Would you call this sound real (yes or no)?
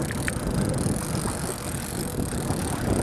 yes